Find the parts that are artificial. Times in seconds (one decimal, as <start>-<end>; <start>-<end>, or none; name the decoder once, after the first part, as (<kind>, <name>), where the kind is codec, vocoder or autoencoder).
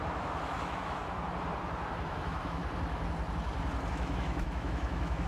0.0-1.0 (autoencoder, DAC-VAE); 2.1-2.6; 3.9-5.3